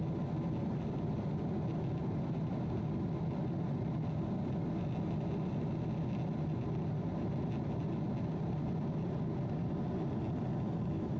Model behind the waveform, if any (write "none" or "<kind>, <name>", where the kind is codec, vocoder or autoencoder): none